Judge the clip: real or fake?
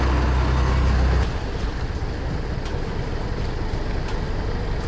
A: real